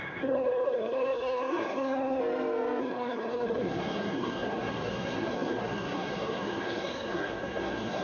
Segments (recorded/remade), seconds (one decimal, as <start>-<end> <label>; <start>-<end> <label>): 0.0-2.2 remade; 2.2-2.8 recorded; 2.8-8.0 remade